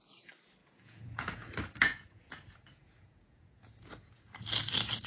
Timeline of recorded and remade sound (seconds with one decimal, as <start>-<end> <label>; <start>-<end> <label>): 0.0-0.6 recorded; 0.6-1.5 remade; 1.5-1.9 recorded; 1.9-4.4 remade; 4.4-5.1 recorded